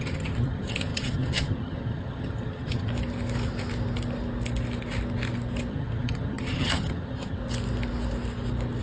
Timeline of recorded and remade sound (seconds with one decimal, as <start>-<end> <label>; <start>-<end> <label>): 0.0-2.9 remade; 2.9-5.7 recorded; 5.7-7.4 remade; 7.4-8.8 recorded